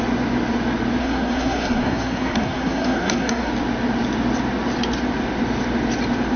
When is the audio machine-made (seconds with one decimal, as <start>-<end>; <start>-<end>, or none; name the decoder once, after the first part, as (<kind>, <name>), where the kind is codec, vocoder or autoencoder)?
1.0-3.5 (codec, SNAC)